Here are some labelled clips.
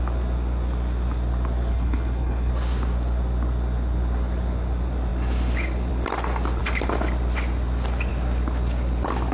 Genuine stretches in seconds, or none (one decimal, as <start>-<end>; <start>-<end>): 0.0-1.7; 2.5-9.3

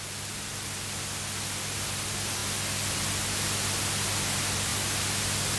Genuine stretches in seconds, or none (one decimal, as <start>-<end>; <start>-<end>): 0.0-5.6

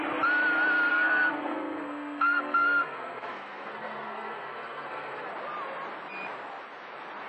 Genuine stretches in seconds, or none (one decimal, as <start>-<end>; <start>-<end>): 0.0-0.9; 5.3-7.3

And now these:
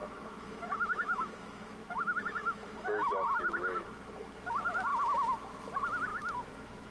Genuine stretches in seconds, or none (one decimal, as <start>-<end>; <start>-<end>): 4.1-4.9; 5.6-6.1

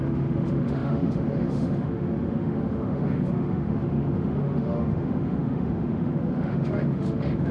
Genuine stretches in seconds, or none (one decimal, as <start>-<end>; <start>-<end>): none

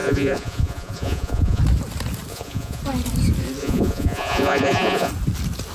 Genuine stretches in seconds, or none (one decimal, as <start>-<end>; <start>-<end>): 1.6-2.3; 2.8-3.6; 5.1-5.7

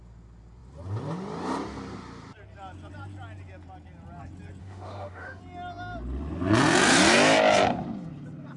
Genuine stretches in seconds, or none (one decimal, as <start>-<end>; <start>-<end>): 0.0-4.6; 5.4-8.6